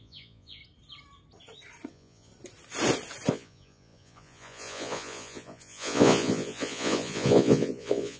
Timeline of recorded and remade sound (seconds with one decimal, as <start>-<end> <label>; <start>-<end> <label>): 0.0-0.6 remade; 0.6-1.9 recorded; 1.9-2.3 remade; 2.3-3.3 recorded; 3.3-8.2 remade